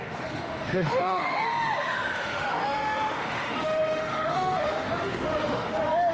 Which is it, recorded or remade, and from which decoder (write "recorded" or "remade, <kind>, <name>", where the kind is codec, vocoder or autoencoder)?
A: remade, autoencoder, DAC-VAE